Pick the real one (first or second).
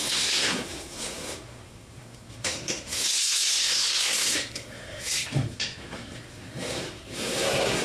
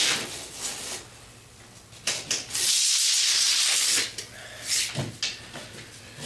second